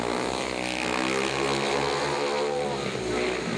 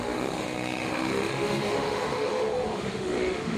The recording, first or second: first